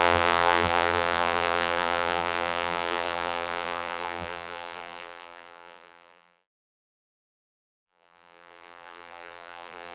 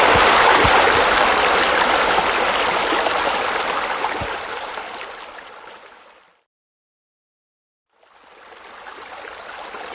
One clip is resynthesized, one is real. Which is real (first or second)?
second